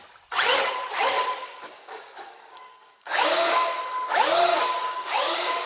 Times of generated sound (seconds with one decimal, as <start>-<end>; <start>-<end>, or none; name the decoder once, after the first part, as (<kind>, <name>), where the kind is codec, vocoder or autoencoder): 1.4-3.8 (codec, DAC); 4.5-5.7